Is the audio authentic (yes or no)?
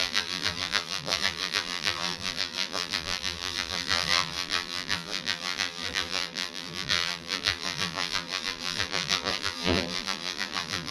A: no